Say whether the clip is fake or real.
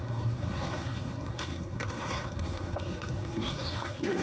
fake